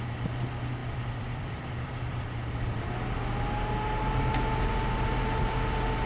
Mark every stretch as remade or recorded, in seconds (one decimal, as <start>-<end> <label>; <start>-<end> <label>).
0.0-0.8 recorded; 0.8-2.8 remade; 2.8-6.1 recorded